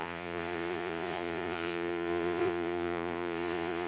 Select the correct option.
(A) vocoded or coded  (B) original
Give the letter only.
A